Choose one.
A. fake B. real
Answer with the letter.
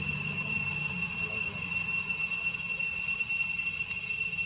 B